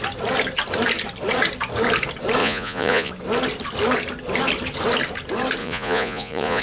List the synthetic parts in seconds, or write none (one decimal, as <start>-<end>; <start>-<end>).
2.4-3.1; 5.6-6.6